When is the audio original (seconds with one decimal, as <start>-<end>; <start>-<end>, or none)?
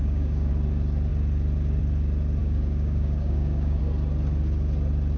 0.5-2.4; 3.8-5.2